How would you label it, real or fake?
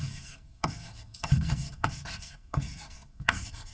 fake